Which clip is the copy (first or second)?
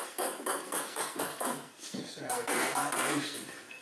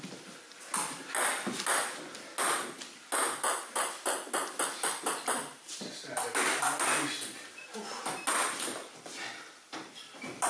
first